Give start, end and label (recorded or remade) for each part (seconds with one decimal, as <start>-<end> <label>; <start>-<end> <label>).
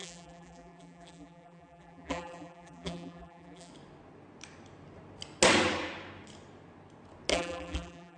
0.0-3.7 remade; 3.7-7.3 recorded; 7.3-8.2 remade